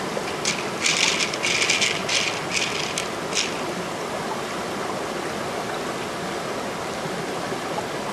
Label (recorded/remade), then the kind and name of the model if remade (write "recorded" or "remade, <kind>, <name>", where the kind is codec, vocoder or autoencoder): recorded